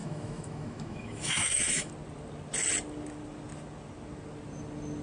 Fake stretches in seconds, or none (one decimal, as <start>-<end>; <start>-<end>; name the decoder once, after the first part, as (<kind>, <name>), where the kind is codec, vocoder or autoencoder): 0.0-1.9 (autoencoder, DAC-VAE)